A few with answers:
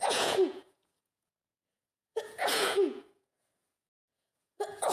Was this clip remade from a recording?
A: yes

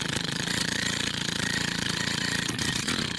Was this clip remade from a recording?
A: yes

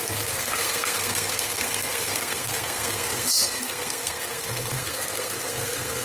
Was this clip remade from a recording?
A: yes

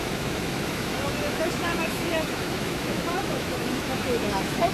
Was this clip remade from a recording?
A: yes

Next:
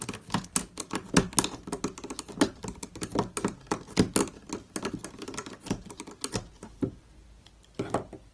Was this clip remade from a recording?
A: no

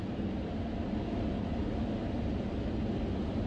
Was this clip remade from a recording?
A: no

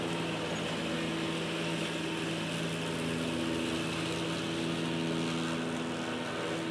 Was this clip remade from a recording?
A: no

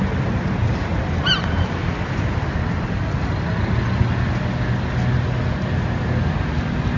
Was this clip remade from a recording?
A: no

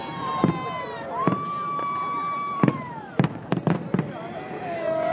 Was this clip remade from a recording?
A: yes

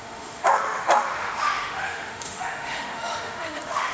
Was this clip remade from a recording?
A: yes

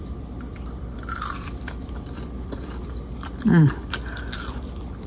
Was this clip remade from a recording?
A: yes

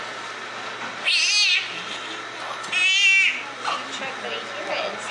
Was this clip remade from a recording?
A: no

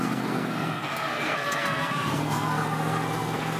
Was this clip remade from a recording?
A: yes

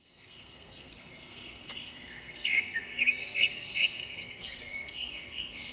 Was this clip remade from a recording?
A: yes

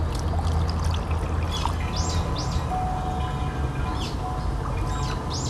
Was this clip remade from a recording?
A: no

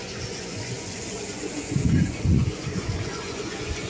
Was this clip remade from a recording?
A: yes